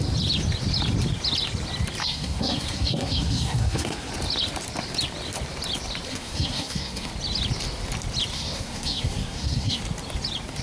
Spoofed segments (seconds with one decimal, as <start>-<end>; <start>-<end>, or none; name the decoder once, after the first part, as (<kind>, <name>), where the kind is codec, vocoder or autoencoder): 2.0-4.1 (codec, SNAC); 6.1-7.1; 8.3-9.8